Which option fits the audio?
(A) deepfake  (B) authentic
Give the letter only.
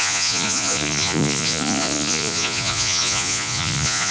A